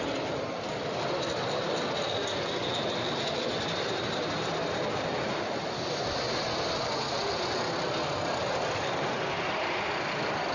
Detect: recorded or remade recorded